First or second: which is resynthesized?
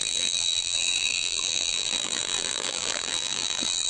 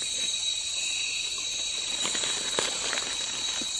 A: first